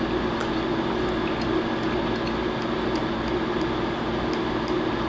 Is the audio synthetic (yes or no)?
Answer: no